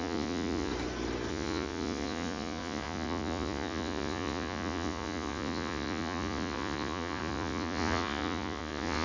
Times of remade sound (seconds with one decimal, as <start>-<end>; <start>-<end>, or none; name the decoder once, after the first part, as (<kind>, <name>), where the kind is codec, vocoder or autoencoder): 0.0-0.7 (vocoder, Vocos); 1.3-9.0